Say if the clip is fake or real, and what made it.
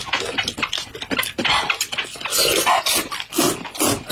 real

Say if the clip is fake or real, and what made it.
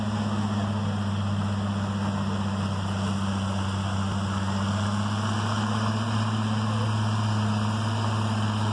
real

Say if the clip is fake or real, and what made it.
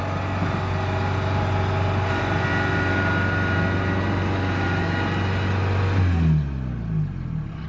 real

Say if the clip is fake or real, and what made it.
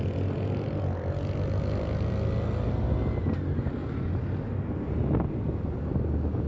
real